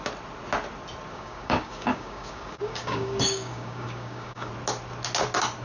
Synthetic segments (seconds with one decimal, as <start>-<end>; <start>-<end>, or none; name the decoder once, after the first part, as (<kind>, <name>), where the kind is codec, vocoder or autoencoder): 1.1-4.5 (codec, DAC)